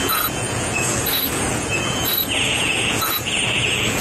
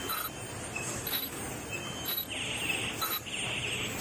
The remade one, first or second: first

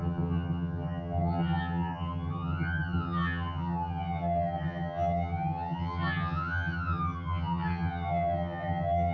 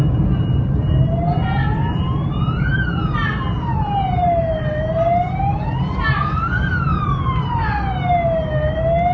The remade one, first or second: first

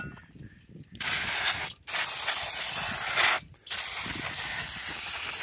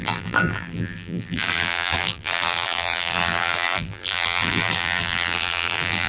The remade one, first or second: second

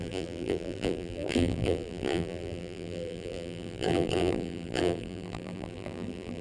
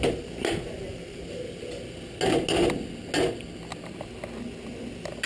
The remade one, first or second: first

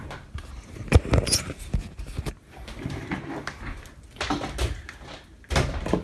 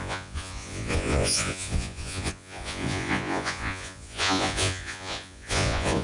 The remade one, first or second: second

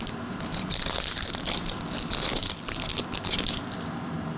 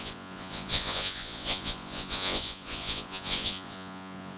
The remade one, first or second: second